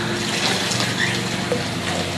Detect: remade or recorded recorded